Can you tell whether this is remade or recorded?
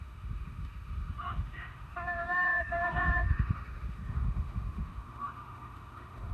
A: remade